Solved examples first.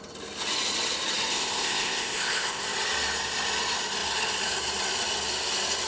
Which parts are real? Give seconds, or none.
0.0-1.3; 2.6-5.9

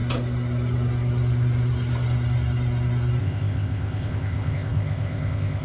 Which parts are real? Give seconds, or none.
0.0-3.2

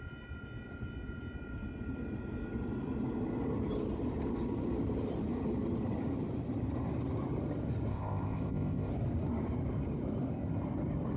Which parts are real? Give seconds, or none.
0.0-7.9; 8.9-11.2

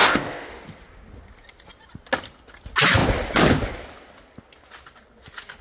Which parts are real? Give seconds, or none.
0.5-5.6

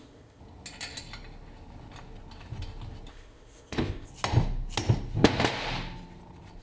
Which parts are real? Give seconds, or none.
0.4-3.1; 4.1-6.6

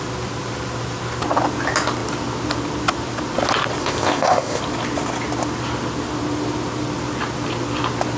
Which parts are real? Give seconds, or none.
0.0-3.8; 4.6-8.2